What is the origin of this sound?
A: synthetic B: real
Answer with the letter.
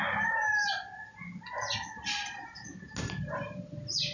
B